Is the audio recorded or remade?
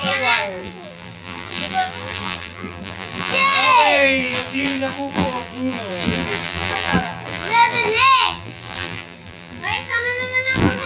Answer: remade